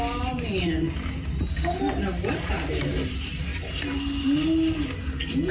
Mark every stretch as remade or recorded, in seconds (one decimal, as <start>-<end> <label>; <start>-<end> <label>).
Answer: 0.0-3.5 remade; 3.5-5.5 recorded